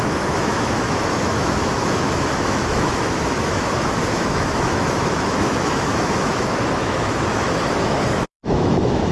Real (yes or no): no